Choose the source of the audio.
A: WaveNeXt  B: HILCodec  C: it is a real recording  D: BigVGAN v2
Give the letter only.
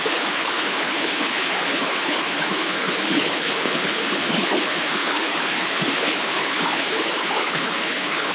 B